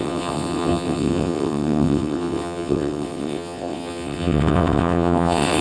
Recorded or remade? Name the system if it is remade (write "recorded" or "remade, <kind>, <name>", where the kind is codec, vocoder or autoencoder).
remade, vocoder, WaveNeXt